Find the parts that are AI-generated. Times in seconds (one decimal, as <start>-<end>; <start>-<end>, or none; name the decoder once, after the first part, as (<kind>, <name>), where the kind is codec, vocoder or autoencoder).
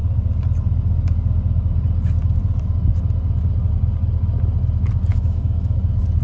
5.1-5.8 (autoencoder, DAC-VAE)